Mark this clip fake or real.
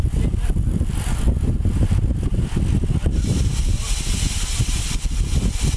real